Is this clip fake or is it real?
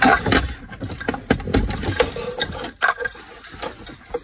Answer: real